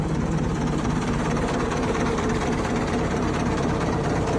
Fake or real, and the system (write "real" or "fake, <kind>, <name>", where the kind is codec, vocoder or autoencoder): fake, vocoder, BigVGAN v2